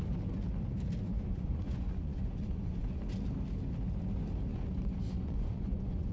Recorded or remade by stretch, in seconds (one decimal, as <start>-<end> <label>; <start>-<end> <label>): 0.0-1.1 recorded; 1.1-3.0 remade; 3.0-4.5 recorded; 4.5-6.1 remade